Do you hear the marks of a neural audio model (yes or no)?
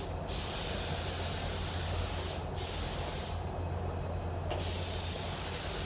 no